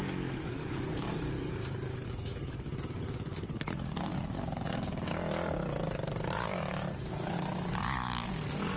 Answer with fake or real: fake